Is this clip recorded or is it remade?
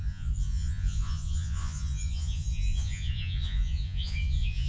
remade